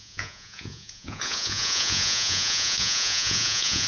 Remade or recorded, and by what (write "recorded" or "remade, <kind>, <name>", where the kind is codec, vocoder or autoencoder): remade, vocoder, Vocos